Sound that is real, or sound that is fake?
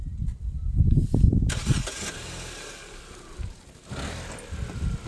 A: real